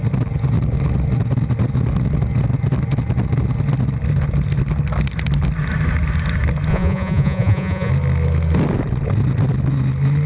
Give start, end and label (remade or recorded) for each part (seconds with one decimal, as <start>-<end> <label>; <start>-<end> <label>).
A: 0.0-6.7 recorded; 6.7-7.9 remade; 7.9-10.3 recorded